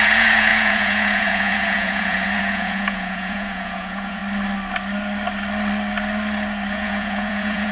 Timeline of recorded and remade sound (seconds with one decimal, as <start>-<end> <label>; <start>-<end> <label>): 0.0-4.2 remade; 4.2-6.7 recorded; 6.7-7.7 remade